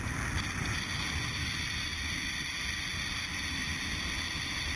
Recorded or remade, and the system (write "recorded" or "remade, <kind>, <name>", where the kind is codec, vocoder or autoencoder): recorded